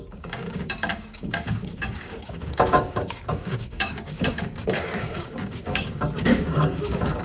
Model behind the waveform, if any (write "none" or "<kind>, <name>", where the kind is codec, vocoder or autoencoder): codec, DAC